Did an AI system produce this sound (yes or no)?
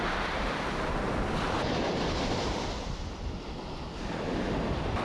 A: no